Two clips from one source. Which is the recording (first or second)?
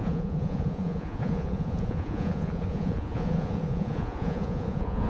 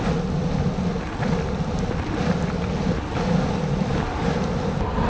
second